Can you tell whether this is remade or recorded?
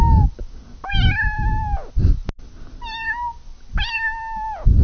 recorded